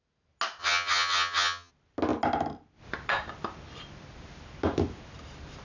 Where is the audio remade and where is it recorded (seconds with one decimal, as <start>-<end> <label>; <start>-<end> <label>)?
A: 0.0-0.6 recorded; 0.6-1.7 remade; 1.7-5.6 recorded